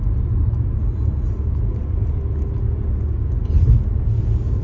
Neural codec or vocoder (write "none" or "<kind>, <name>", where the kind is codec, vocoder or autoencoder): none